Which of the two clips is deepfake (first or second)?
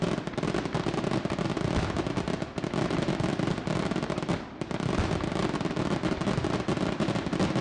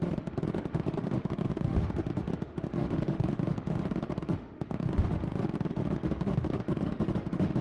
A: second